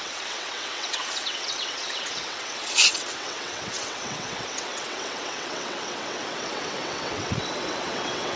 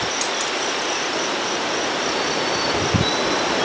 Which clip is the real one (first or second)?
second